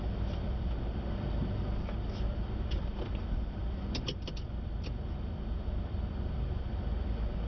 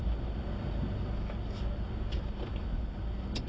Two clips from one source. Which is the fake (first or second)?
first